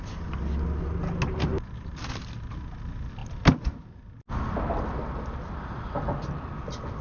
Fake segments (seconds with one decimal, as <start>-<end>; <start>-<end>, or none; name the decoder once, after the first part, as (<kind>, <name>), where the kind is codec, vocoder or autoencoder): none